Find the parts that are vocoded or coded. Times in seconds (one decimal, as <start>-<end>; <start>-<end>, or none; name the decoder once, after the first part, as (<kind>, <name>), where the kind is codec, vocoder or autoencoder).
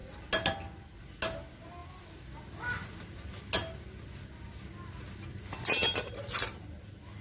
none